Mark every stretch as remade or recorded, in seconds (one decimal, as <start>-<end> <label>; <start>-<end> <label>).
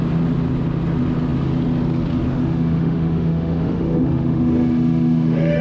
0.0-2.4 recorded; 2.4-5.6 remade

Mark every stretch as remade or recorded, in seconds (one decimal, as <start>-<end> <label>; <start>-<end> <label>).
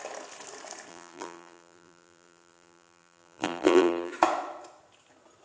0.0-0.9 recorded; 0.9-4.1 remade; 4.1-5.4 recorded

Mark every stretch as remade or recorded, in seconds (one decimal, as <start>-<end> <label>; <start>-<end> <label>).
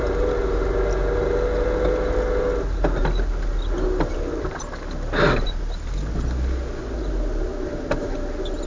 0.0-8.7 recorded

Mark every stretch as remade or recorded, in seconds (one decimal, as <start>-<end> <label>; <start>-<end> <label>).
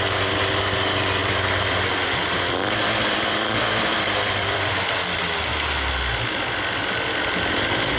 0.0-1.2 recorded; 1.2-4.9 remade; 4.9-8.0 recorded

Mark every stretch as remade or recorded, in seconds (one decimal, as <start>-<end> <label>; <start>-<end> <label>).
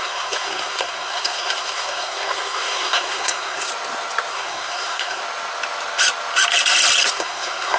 0.0-3.7 remade; 3.7-4.3 recorded; 4.3-5.2 remade; 5.2-7.1 recorded; 7.1-7.8 remade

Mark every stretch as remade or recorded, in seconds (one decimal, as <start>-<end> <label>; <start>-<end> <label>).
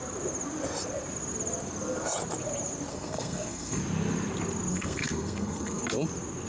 0.0-2.9 recorded; 2.9-3.8 remade; 3.8-4.7 recorded; 4.7-5.8 remade; 5.8-6.5 recorded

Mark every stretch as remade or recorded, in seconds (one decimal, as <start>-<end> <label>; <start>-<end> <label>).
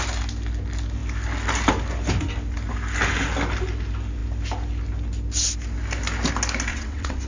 0.0-6.7 recorded; 6.7-7.3 remade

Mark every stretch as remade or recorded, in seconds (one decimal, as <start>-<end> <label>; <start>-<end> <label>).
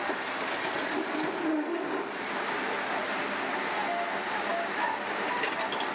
0.0-5.9 recorded